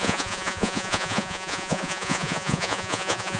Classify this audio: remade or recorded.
remade